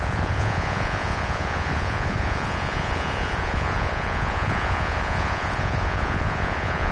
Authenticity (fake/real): fake